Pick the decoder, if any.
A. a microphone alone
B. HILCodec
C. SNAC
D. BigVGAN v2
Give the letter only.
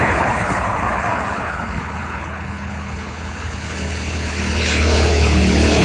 B